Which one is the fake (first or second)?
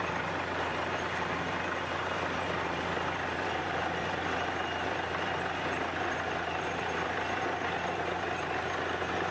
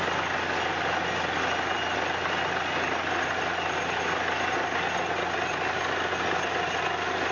first